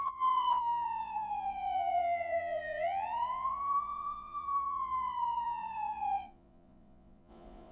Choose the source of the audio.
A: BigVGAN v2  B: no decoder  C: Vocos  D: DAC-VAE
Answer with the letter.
C